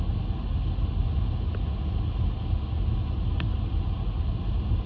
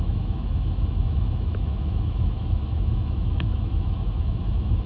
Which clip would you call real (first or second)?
first